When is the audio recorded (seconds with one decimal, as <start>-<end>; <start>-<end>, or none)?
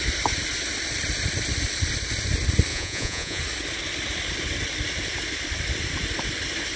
0.0-2.7; 3.4-6.8